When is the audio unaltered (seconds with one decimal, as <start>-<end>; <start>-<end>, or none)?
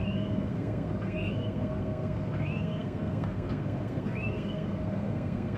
none